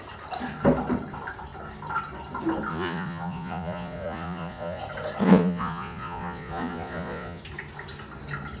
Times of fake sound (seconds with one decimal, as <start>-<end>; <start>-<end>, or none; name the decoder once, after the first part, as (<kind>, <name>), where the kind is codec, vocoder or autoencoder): 2.7-4.8 (vocoder, Vocos); 5.2-7.4